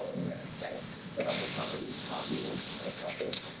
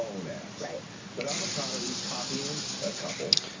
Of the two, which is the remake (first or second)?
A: first